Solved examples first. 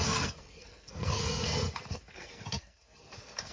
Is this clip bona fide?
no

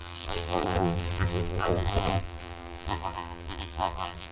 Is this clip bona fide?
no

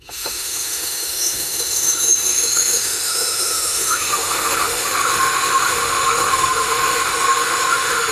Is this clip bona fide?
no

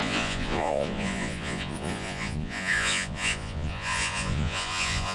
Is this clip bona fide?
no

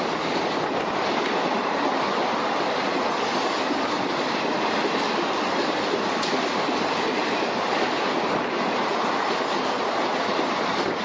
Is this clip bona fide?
yes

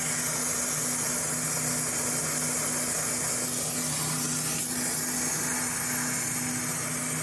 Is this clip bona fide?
yes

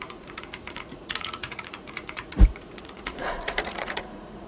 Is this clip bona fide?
no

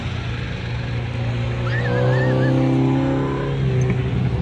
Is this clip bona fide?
yes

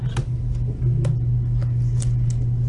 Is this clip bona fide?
yes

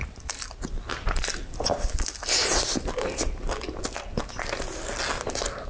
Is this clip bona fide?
yes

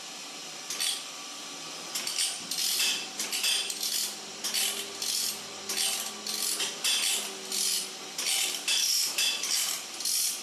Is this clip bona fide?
yes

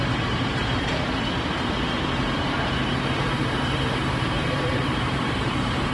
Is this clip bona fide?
no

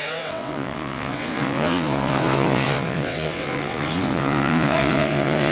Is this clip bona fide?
no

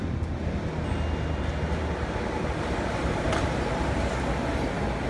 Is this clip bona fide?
yes